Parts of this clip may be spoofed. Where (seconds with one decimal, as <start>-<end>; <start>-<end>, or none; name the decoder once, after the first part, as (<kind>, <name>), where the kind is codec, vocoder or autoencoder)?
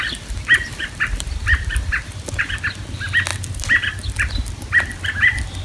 none